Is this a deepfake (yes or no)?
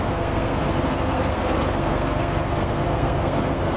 yes